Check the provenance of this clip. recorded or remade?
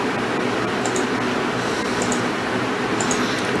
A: recorded